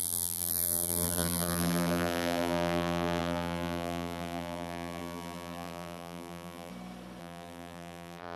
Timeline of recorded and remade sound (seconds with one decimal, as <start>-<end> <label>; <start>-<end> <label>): 0.0-6.7 remade; 6.7-7.2 recorded; 7.2-8.4 remade